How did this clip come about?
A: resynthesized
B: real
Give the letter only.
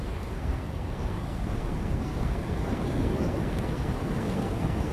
A